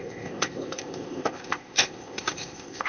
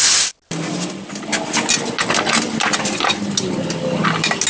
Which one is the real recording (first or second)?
second